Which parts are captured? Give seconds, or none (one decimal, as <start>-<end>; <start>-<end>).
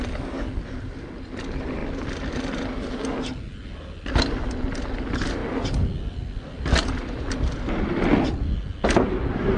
0.0-9.6